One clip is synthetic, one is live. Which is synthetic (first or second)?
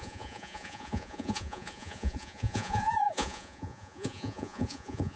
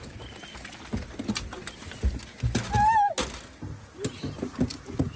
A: first